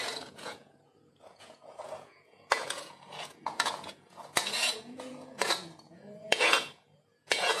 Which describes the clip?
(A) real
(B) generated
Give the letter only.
B